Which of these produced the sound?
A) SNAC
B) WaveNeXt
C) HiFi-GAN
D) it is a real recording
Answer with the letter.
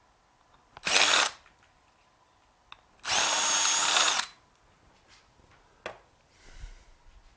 D